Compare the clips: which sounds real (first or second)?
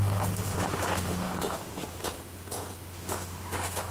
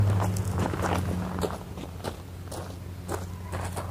second